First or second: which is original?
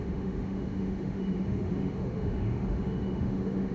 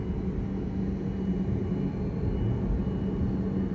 second